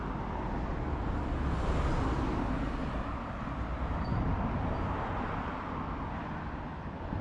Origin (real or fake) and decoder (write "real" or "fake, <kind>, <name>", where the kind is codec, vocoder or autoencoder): real